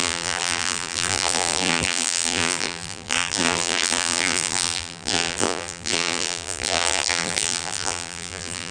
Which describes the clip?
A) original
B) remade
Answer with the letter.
B